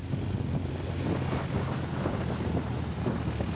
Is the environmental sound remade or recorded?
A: recorded